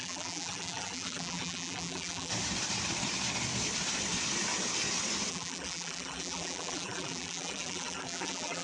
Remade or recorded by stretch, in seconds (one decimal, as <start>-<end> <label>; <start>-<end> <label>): 0.0-2.3 remade; 2.3-5.3 recorded; 5.3-8.6 remade